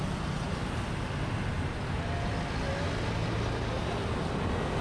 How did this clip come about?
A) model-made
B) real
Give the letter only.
B